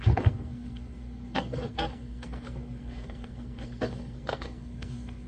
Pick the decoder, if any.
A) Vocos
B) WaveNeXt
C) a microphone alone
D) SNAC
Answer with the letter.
D